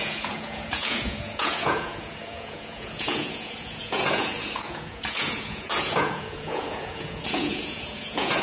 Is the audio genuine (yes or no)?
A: no